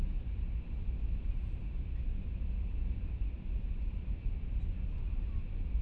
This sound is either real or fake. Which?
real